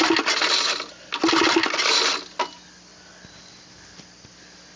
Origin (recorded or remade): recorded